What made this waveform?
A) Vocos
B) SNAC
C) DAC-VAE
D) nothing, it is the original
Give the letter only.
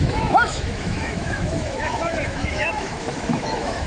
C